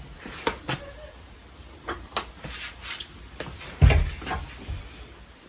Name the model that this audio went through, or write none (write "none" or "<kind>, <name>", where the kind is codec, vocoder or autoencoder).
none